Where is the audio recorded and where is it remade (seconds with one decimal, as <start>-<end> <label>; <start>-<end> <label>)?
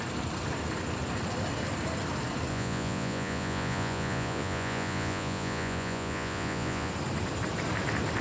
0.0-2.5 recorded; 2.5-6.9 remade; 6.9-8.2 recorded